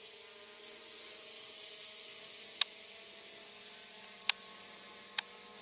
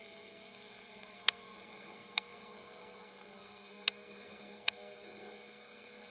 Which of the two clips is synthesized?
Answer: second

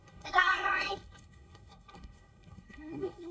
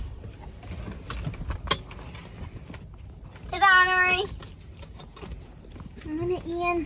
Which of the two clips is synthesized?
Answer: first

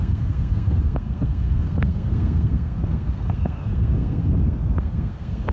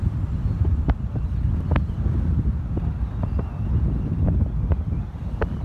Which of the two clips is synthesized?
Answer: first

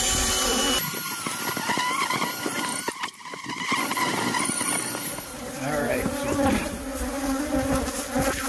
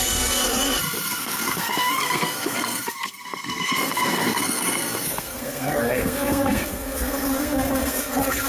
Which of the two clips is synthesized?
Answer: second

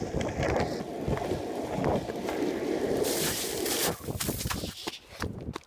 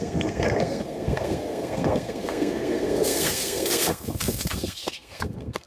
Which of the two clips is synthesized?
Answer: second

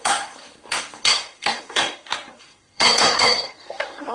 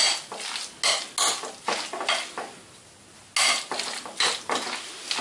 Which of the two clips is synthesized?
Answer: first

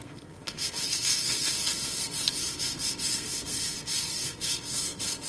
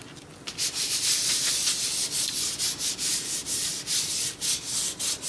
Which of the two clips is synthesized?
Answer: first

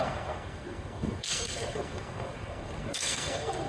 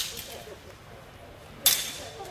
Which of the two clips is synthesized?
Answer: first